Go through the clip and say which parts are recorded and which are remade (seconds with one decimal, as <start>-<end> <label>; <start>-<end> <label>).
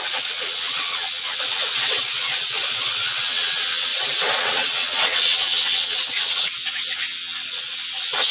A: 0.0-3.9 remade; 3.9-4.4 recorded; 4.4-8.3 remade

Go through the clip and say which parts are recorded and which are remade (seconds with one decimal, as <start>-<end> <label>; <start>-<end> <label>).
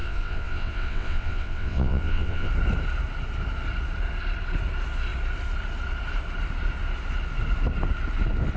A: 0.0-2.5 remade; 2.5-8.6 recorded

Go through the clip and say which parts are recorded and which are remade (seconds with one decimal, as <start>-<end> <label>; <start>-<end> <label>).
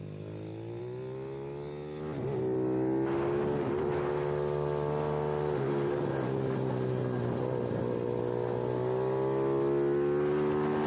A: 0.0-10.9 recorded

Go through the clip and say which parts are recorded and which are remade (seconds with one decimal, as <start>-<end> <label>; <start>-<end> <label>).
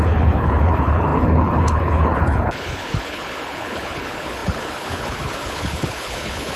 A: 0.0-6.6 remade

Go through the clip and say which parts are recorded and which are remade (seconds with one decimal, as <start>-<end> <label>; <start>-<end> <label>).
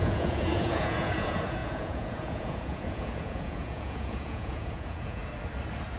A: 0.0-5.2 remade; 5.2-6.0 recorded